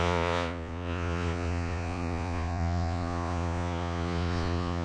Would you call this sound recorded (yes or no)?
no